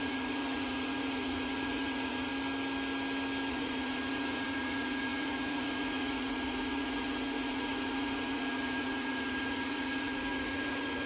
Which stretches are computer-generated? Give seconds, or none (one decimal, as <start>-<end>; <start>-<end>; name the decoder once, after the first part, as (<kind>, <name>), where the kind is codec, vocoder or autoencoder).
0.0-2.3 (vocoder, Vocos); 3.5-11.1